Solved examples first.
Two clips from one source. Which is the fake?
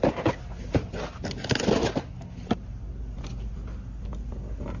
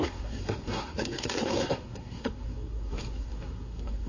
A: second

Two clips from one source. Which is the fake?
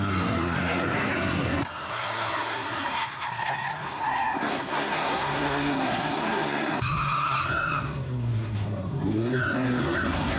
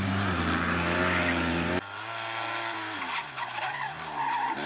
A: first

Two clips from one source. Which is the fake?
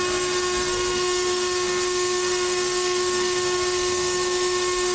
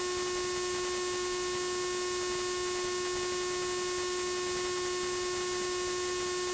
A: first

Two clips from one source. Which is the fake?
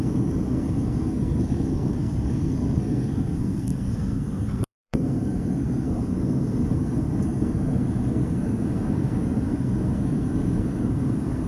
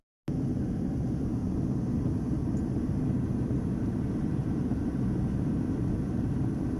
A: first